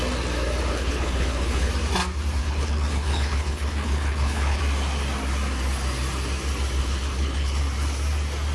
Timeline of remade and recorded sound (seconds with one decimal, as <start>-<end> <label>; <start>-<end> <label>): 0.0-0.7 recorded; 0.7-1.7 remade; 1.7-2.4 recorded; 2.4-4.6 remade; 4.6-6.8 recorded; 6.8-7.6 remade; 7.6-8.5 recorded